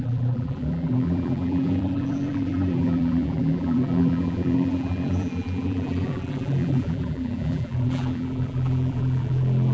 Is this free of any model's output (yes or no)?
no